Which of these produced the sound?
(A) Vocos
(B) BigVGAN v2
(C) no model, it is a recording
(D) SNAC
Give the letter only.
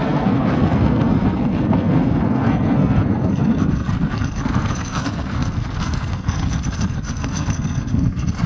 D